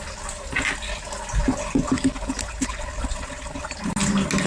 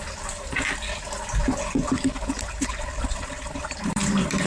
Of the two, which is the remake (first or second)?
second